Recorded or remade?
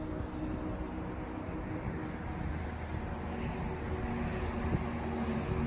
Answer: recorded